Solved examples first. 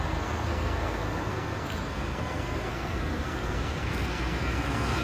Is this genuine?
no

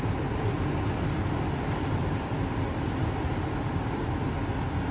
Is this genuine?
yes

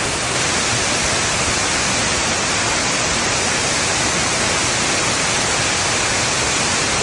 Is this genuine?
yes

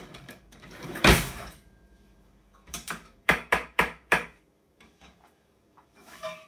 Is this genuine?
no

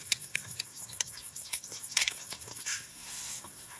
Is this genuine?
no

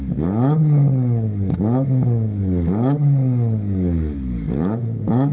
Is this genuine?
no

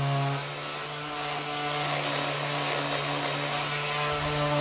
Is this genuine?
yes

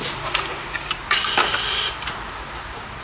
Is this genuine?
yes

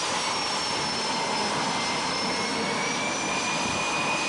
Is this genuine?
yes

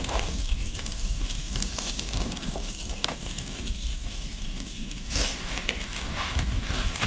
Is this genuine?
no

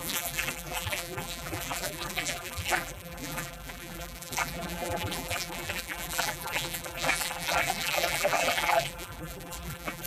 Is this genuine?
no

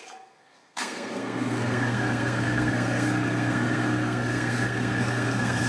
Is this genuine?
no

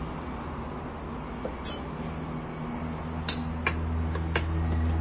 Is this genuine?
yes